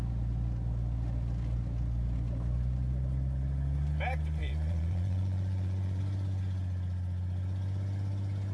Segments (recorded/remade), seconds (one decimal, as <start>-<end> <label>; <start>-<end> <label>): 0.0-4.4 recorded; 4.4-6.0 remade; 6.0-8.5 recorded